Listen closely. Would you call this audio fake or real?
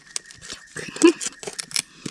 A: real